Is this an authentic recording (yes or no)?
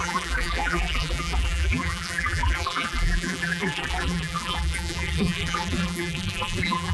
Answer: no